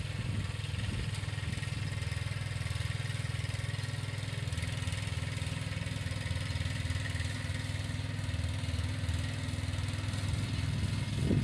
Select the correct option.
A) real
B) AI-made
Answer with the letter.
A